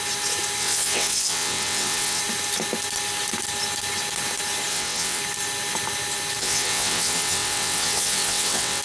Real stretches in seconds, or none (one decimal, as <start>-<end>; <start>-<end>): 0.0-0.6; 2.2-4.7; 5.2-6.4